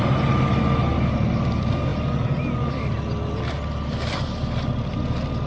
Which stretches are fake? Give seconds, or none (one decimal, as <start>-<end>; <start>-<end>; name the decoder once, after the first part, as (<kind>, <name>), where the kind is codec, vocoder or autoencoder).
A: none